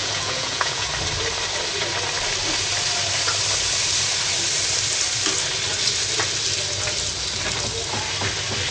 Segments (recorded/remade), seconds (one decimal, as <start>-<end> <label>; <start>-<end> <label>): 0.0-0.9 remade; 0.9-8.7 recorded